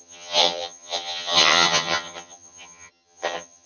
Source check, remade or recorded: remade